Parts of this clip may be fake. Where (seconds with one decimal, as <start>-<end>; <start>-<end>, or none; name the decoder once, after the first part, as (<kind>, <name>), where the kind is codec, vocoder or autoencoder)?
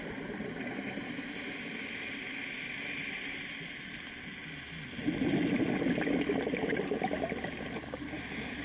none